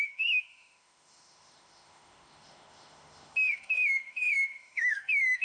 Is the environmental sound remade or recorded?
remade